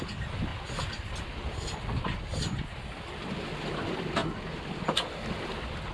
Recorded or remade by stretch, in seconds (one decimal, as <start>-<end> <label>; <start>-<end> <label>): 0.0-5.9 recorded

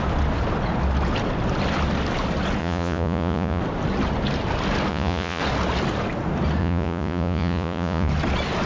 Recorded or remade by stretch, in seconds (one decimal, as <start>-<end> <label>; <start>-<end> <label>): 0.0-2.6 recorded; 2.6-3.6 remade; 3.6-4.9 recorded; 4.9-5.4 remade; 5.4-6.6 recorded; 6.6-8.1 remade; 8.1-8.7 recorded

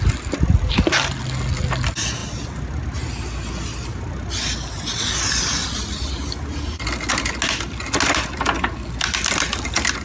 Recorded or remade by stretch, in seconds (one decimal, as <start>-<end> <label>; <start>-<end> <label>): 0.0-10.0 recorded

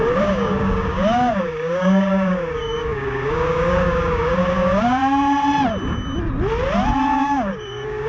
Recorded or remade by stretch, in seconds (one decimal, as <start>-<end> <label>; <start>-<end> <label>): 0.0-5.0 remade; 5.0-7.1 recorded; 7.1-8.1 remade

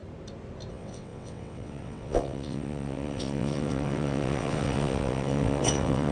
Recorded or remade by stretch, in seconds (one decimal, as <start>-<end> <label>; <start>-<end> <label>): 0.0-0.7 recorded; 0.7-6.1 remade

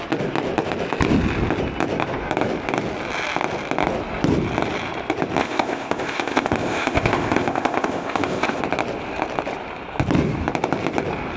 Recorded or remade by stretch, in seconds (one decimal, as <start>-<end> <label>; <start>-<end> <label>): 0.0-5.4 recorded; 5.4-8.6 remade; 8.6-11.4 recorded

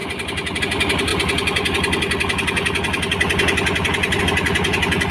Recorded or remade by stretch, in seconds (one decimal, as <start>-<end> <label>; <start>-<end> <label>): 0.0-5.1 recorded